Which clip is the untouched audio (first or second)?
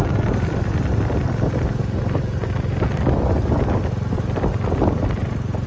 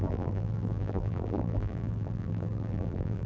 first